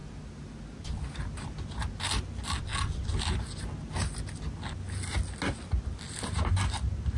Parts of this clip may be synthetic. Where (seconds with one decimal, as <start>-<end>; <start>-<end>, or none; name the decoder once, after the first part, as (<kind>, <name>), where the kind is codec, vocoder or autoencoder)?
0.0-0.6 (vocoder, BigVGAN v2)